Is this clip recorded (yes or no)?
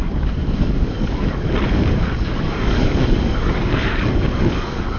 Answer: no